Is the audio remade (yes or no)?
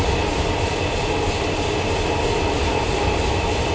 no